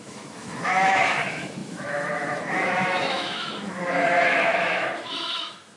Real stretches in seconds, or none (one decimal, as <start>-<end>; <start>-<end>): none